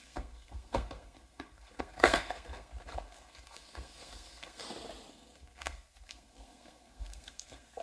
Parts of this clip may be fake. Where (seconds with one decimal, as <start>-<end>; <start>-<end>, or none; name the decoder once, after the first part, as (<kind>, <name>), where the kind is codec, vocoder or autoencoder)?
0.0-4.6 (codec, SNAC); 5.1-7.8